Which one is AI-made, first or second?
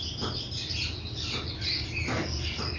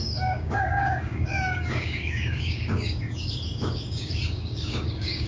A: second